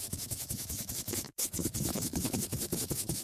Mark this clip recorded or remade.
remade